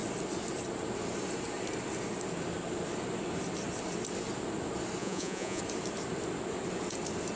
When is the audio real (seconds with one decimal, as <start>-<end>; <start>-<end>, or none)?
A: 0.0-5.0; 5.6-7.4